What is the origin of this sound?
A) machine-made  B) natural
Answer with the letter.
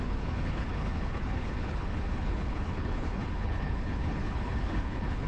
A